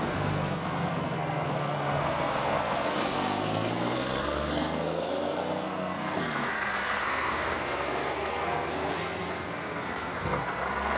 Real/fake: fake